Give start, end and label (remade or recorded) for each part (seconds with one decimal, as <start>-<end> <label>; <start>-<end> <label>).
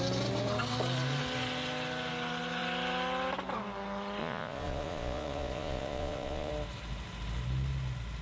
0.0-4.2 recorded; 4.2-6.5 remade; 6.5-8.2 recorded